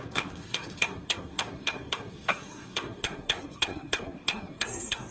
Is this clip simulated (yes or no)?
yes